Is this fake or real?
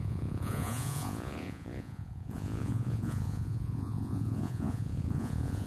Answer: fake